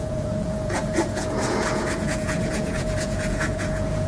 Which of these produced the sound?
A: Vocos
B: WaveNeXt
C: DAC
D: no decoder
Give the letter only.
A